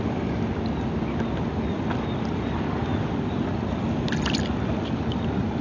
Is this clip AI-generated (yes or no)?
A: no